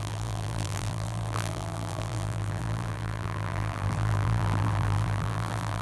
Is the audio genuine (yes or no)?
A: no